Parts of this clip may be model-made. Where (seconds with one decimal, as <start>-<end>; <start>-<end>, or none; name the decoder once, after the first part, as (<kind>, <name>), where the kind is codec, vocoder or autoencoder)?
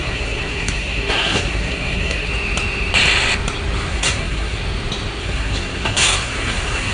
0.0-2.3 (codec, SNAC); 3.9-4.6; 5.2-6.9